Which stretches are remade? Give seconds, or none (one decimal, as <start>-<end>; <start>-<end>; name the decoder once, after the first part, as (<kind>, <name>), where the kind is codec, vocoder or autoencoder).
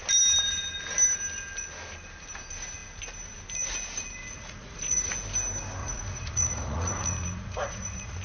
4.2-5.1 (vocoder, Vocos); 5.8-8.2